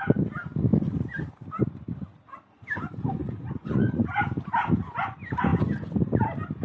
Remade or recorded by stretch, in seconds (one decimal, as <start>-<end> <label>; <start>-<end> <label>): 0.0-3.2 recorded; 3.2-4.2 remade; 4.2-6.6 recorded